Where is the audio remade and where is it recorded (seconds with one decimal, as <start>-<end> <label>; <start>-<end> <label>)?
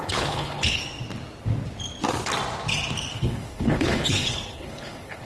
0.0-0.8 remade; 0.8-3.1 recorded; 3.1-5.2 remade